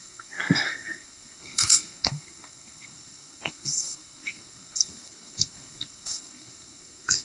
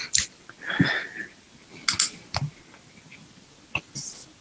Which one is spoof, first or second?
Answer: first